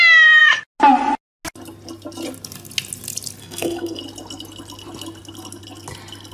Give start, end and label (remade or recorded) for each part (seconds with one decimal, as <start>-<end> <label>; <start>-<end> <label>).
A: 0.0-3.4 recorded; 3.4-4.0 remade; 4.0-6.3 recorded